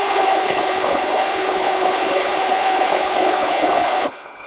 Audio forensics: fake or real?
fake